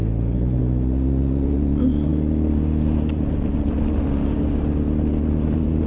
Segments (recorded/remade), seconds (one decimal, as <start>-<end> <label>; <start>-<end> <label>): 0.0-0.6 remade; 0.6-5.9 recorded